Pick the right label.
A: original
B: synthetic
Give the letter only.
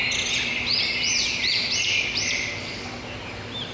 A